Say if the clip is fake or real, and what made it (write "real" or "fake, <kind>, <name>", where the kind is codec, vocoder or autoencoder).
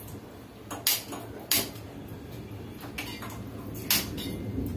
real